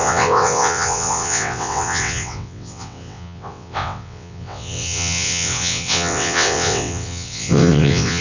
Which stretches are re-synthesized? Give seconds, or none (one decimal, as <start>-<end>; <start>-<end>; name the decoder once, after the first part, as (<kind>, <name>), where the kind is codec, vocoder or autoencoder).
0.0-8.2 (vocoder, WaveNeXt)